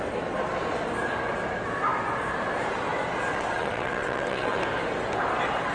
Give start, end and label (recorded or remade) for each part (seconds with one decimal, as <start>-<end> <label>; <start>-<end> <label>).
0.0-3.3 recorded; 3.3-4.6 remade; 4.6-5.7 recorded